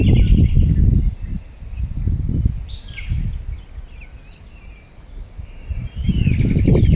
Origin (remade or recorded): recorded